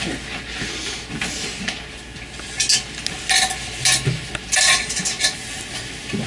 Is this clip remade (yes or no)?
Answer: no